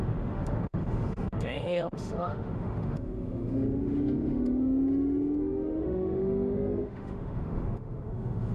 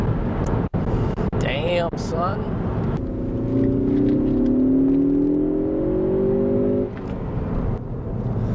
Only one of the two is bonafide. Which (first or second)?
second